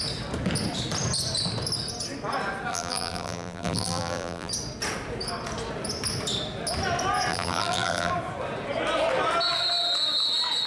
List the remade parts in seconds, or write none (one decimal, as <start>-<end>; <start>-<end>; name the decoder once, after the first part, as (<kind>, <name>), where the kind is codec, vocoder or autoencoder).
2.7-4.5 (vocoder, BigVGAN v2); 7.3-8.1